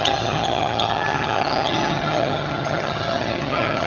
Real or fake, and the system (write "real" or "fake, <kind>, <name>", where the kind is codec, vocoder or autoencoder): fake, vocoder, HiFi-GAN